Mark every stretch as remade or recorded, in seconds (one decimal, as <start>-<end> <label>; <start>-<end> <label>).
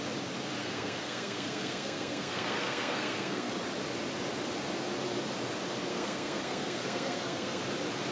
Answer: 0.0-0.6 recorded; 0.6-3.5 remade; 3.5-5.9 recorded; 5.9-7.6 remade; 7.6-8.1 recorded